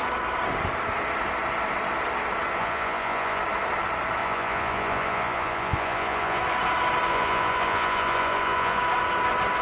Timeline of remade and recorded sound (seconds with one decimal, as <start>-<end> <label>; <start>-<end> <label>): 0.0-2.6 recorded; 2.6-3.4 remade; 3.4-4.2 recorded; 4.2-6.4 remade; 6.4-7.1 recorded; 7.1-8.8 remade; 8.8-9.6 recorded